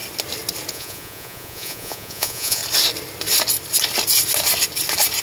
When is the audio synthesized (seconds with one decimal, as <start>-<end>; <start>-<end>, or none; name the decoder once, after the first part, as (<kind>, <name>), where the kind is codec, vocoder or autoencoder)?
0.7-2.6 (vocoder, Vocos)

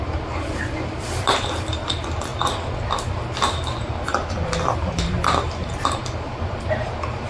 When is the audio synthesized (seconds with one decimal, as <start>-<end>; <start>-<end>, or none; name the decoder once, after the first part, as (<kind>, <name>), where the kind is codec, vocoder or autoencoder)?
none

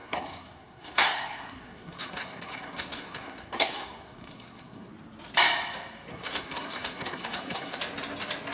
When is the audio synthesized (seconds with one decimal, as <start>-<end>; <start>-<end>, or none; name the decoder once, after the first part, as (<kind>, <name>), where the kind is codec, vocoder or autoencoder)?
0.0-4.9 (codec, SNAC); 6.1-7.8

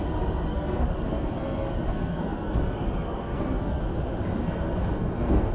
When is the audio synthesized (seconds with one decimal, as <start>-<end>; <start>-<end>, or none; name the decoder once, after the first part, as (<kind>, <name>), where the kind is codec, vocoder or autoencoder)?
0.5-3.8 (codec, SNAC); 4.4-5.5